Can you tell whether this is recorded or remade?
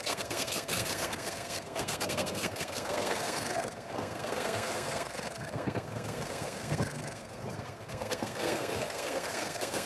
remade